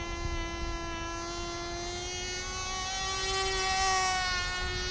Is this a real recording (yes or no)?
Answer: yes